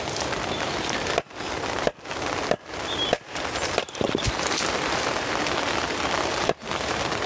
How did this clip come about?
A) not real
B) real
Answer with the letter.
B